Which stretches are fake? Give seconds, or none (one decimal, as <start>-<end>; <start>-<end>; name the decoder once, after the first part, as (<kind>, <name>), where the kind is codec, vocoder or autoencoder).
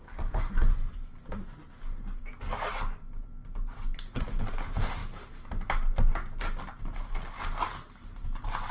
none